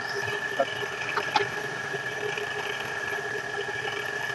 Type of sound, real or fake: real